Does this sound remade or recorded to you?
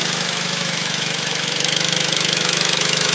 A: remade